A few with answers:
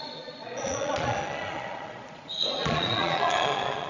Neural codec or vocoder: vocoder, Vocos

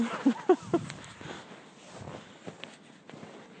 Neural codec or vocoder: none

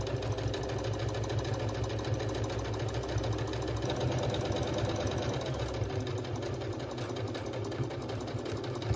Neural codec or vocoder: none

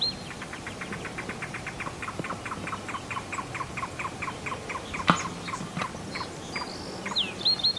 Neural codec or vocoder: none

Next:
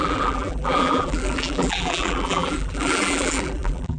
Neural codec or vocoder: vocoder, BigVGAN v2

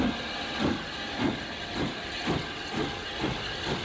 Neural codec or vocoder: none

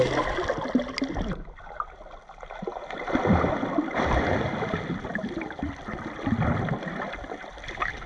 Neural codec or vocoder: none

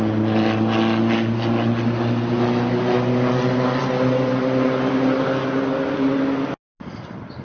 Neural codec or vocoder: none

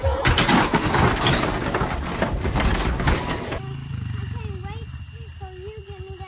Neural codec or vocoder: none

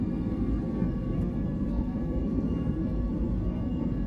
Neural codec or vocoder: codec, SNAC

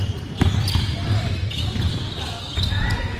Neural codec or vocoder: none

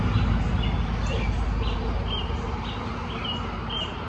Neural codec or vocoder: none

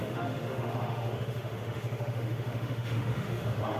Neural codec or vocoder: autoencoder, DAC-VAE